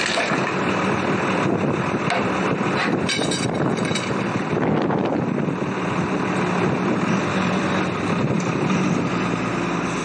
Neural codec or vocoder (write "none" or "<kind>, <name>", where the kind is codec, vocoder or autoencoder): none